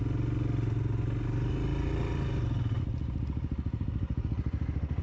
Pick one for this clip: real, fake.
real